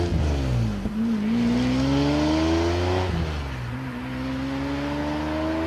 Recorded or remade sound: recorded